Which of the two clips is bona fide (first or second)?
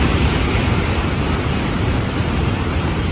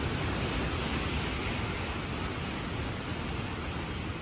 second